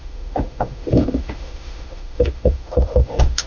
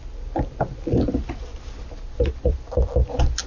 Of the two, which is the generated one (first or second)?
first